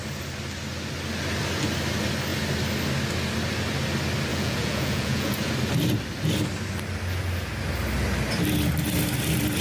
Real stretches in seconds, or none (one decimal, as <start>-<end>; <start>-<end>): 0.0-4.3; 5.5-9.6

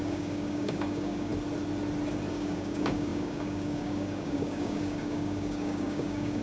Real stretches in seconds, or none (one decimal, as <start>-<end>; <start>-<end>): 1.3-2.3